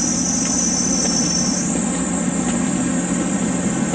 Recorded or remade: recorded